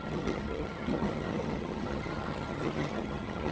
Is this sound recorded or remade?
remade